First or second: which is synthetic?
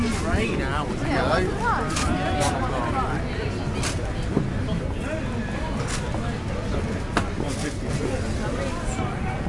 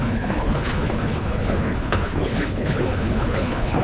second